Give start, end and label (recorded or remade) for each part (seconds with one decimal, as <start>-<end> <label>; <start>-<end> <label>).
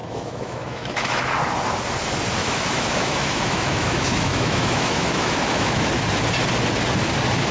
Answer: 0.0-1.2 remade; 1.2-2.4 recorded; 2.4-5.9 remade; 5.9-7.5 recorded